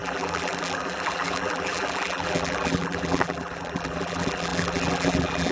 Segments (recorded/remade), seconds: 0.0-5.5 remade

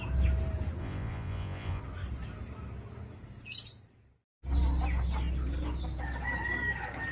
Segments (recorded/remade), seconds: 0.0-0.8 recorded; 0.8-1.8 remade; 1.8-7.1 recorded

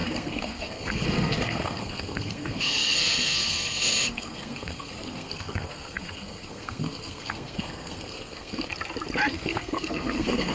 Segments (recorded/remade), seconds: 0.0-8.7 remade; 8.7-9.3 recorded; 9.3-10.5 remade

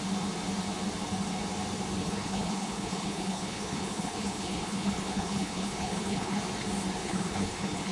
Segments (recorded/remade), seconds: 0.0-2.0 recorded; 2.0-6.4 remade; 6.4-7.0 recorded; 7.0-7.9 remade

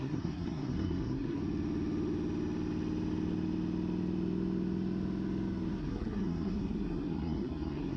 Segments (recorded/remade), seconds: 0.0-1.4 remade; 1.4-5.8 recorded; 5.8-8.0 remade

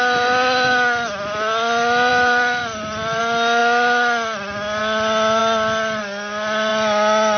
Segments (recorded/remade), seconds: 0.0-2.1 recorded; 2.1-3.2 remade; 3.2-5.4 recorded; 5.4-6.0 remade; 6.0-7.4 recorded

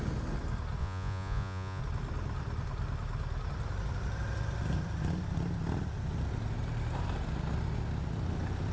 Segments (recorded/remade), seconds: 0.0-0.8 recorded; 0.8-1.8 remade; 1.8-8.7 recorded